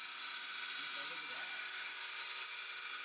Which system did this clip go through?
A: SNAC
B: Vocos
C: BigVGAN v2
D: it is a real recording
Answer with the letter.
D